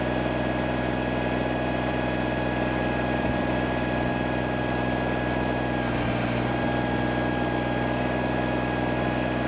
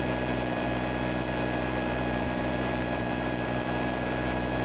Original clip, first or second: first